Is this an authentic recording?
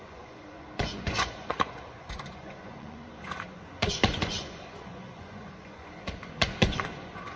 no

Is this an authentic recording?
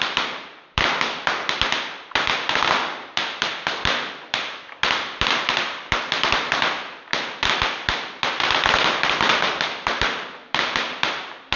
no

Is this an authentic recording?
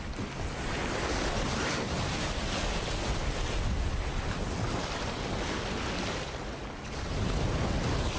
yes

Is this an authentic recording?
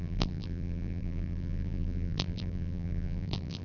no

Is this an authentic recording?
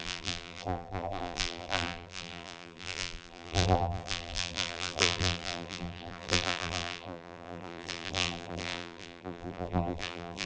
no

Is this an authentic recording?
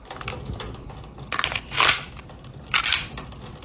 yes